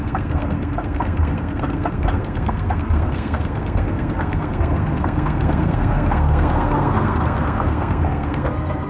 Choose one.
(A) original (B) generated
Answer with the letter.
B